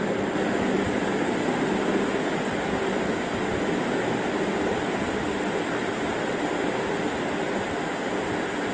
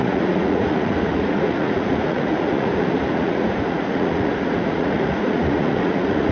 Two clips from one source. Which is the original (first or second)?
first